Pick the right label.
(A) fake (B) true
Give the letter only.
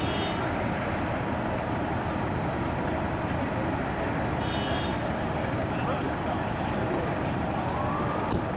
B